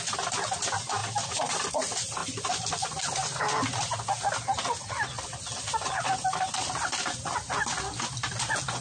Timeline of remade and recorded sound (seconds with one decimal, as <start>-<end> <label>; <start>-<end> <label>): 0.0-1.0 recorded; 1.0-1.7 remade; 1.7-2.2 recorded; 2.2-3.4 remade; 3.4-8.8 recorded